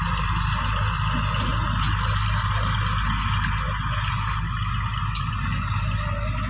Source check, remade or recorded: recorded